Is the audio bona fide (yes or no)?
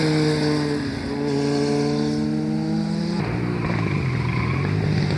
yes